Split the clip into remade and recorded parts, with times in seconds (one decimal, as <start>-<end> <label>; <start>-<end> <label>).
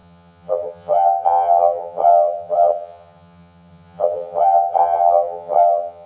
0.0-6.1 remade